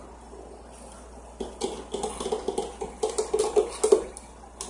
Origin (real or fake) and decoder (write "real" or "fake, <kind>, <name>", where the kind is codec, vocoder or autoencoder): real